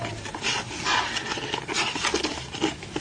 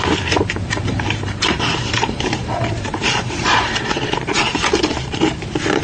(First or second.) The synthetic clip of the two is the second